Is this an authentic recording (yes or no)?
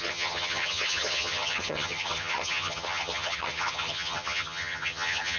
no